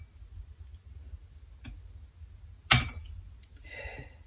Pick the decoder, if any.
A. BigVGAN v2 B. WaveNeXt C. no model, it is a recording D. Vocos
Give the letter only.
C